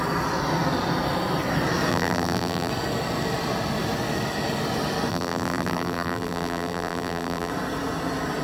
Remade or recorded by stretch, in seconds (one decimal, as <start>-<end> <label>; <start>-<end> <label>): 0.0-1.9 recorded; 1.9-2.7 remade; 2.7-5.1 recorded; 5.1-7.5 remade; 7.5-8.4 recorded